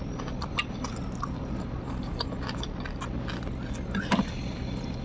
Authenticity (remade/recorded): recorded